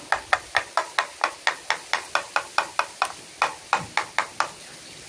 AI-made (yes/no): no